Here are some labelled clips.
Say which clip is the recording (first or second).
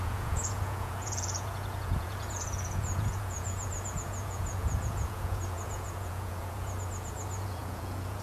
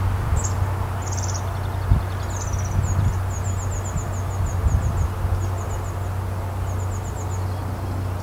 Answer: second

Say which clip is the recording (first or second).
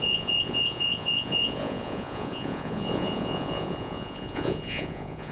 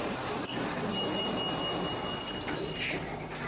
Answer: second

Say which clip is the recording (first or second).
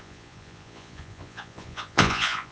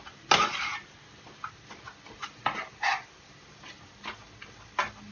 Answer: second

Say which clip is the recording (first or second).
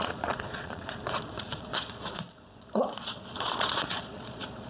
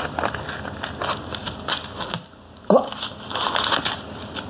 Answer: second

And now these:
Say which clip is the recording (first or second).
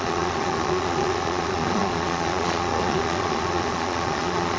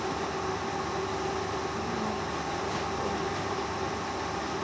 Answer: second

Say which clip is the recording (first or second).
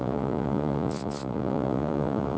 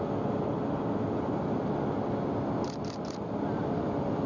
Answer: second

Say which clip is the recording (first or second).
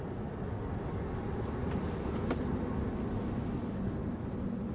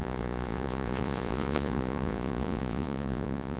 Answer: first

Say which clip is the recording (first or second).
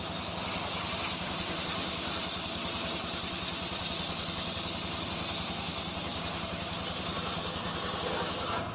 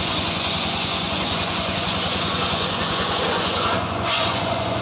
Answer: first